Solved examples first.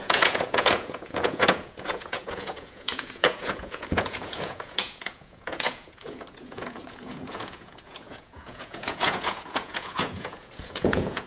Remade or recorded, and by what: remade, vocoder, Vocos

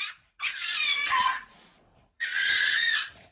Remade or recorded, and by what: remade, vocoder, Vocos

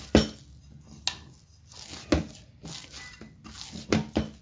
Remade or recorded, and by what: recorded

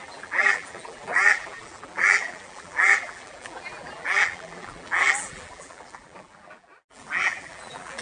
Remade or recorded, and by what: remade, vocoder, BigVGAN v2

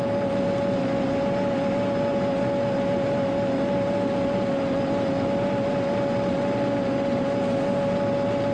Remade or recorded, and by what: recorded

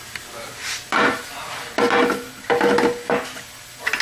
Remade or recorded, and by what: recorded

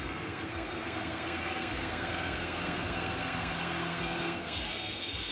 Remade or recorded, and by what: remade, codec, SNAC